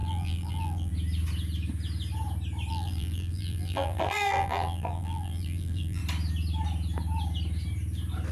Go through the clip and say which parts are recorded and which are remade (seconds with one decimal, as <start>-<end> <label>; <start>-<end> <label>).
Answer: 0.0-0.9 remade; 0.9-2.7 recorded; 2.7-6.0 remade; 6.0-8.3 recorded